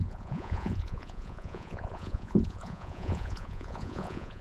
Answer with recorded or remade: remade